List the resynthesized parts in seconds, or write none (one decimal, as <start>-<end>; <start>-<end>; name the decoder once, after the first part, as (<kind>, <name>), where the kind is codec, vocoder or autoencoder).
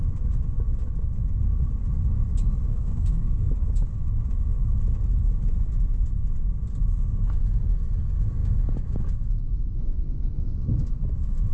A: 2.7-3.5 (codec, SNAC)